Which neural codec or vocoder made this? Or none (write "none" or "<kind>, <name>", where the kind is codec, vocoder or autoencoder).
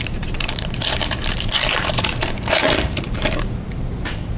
vocoder, BigVGAN v2